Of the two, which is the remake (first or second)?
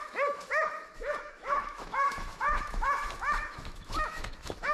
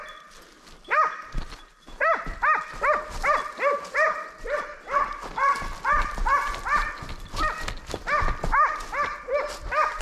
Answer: first